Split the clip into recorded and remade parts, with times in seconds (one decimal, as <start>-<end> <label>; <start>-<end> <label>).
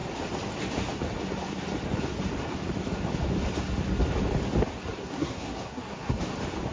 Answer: 0.0-5.0 recorded; 5.0-6.2 remade; 6.2-6.7 recorded